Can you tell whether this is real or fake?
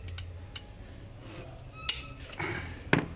real